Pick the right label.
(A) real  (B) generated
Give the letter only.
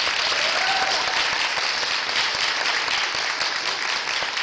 A